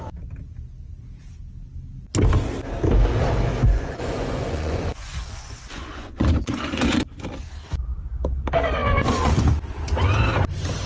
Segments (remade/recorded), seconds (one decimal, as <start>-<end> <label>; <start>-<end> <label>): 0.0-3.5 recorded; 3.5-7.0 remade; 7.0-8.8 recorded; 8.8-9.3 remade; 9.3-10.9 recorded